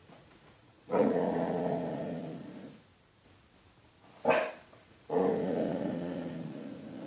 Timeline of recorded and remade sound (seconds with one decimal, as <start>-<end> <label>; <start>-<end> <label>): 0.0-2.9 remade; 2.9-4.9 recorded; 4.9-7.1 remade